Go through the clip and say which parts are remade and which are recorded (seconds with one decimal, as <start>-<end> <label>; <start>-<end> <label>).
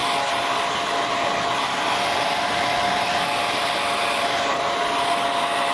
0.0-5.7 recorded